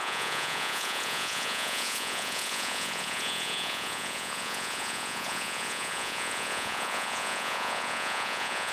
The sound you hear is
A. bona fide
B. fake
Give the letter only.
B